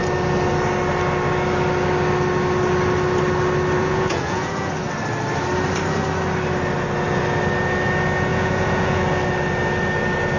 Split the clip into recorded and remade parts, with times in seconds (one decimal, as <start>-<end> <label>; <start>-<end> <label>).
0.0-3.8 recorded; 3.8-4.7 remade; 4.7-8.3 recorded; 8.3-9.0 remade; 9.0-10.4 recorded